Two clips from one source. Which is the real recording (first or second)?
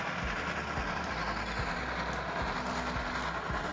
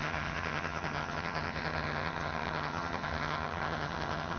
first